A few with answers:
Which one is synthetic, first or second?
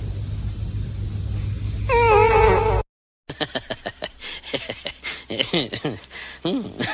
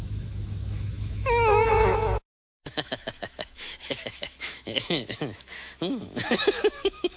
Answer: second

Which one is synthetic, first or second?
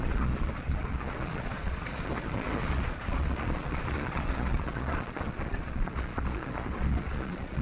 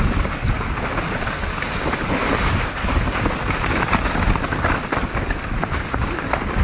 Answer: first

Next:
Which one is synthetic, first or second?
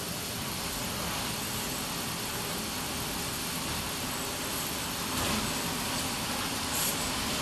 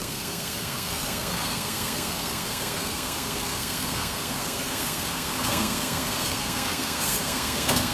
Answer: second